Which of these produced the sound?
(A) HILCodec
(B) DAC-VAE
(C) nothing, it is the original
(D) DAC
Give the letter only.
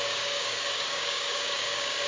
D